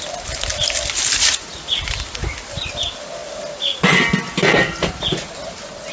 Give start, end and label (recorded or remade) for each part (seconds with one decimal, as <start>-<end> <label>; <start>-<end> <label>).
0.0-5.9 recorded